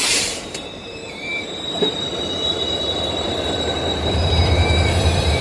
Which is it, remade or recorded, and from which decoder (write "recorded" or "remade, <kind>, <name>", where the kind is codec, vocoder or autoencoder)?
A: remade, vocoder, BigVGAN v2